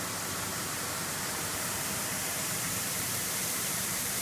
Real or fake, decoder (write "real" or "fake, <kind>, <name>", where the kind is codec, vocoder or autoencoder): fake, vocoder, BigVGAN v2